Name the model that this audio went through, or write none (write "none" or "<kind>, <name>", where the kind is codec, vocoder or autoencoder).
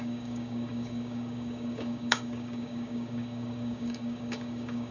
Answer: codec, DAC